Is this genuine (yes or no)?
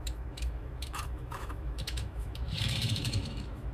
no